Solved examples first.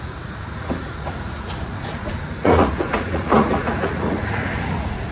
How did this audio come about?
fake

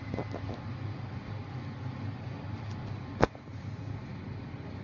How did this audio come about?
real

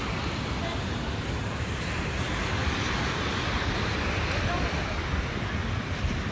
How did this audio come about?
real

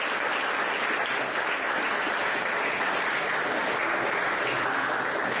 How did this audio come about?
real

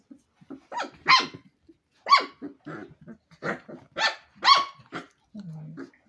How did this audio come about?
real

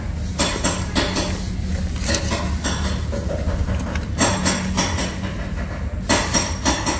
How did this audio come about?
real